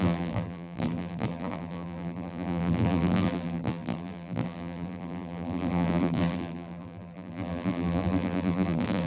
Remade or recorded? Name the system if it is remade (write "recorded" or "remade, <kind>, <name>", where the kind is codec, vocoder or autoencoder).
remade, vocoder, BigVGAN v2